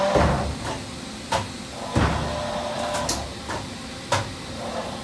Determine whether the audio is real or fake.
real